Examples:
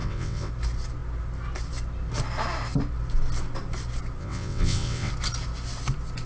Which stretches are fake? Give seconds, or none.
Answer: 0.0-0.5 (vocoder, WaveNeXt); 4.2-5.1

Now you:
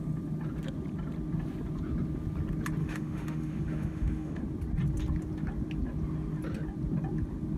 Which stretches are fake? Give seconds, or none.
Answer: 2.8-4.4 (autoencoder, DAC-VAE)